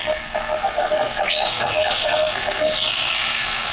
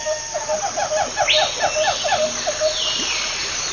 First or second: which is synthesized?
first